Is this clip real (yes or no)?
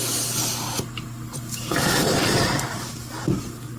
yes